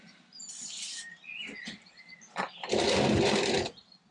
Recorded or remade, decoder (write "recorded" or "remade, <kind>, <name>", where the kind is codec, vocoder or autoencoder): recorded